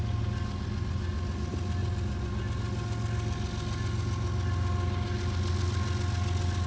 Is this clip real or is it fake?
real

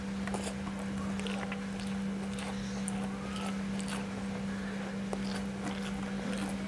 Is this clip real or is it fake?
real